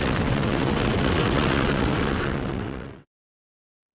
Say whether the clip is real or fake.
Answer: fake